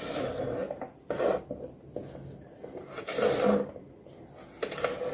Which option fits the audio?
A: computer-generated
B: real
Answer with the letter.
B